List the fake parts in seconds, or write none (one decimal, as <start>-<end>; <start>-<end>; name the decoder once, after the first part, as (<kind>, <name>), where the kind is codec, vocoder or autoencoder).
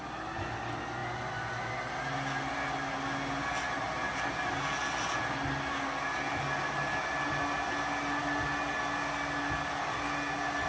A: none